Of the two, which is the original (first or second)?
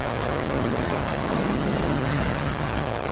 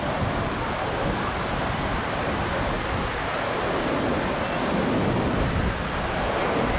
second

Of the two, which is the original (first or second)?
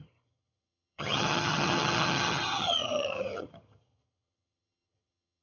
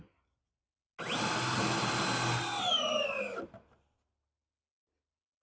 second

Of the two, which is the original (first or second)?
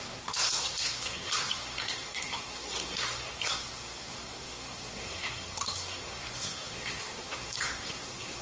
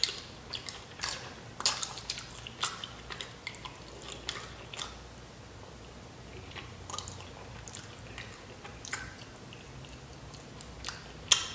second